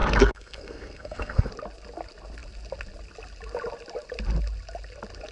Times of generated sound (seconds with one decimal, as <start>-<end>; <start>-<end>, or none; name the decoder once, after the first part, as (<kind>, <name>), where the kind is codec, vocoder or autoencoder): 0.0-1.5 (codec, SNAC)